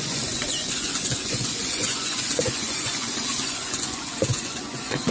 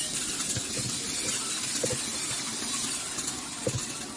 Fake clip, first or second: first